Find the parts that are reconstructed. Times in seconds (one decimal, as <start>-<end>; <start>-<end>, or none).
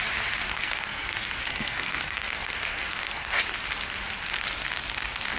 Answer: 0.5-3.4